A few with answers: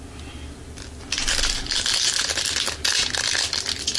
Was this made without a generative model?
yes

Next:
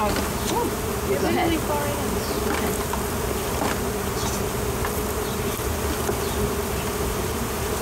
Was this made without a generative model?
yes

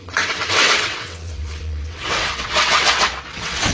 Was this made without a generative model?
no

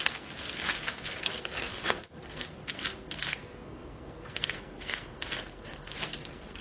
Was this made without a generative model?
no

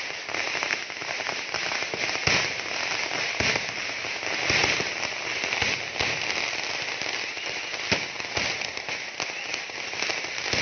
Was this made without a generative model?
yes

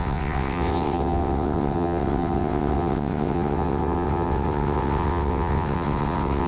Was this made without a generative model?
no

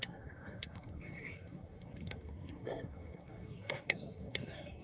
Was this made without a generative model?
no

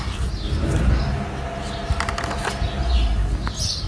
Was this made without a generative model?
yes